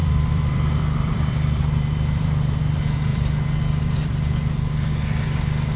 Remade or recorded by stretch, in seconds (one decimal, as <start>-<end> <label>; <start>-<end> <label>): 0.0-2.6 remade; 2.6-3.1 recorded; 3.1-4.1 remade; 4.1-5.8 recorded